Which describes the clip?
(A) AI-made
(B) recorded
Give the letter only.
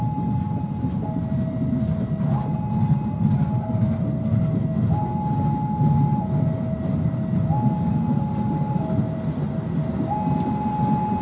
B